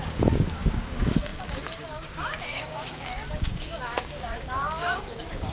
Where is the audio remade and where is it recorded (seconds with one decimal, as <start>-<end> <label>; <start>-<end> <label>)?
0.0-5.5 remade